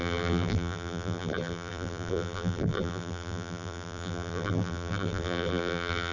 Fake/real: fake